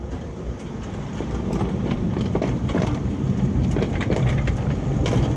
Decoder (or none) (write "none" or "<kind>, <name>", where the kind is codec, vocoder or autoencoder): vocoder, BigVGAN v2